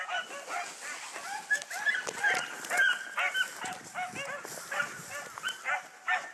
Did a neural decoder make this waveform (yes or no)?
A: no